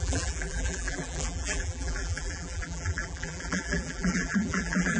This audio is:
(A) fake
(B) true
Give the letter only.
A